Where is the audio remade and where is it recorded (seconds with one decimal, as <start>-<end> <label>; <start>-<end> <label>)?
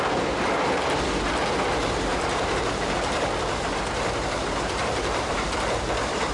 0.0-2.1 recorded; 2.1-6.3 remade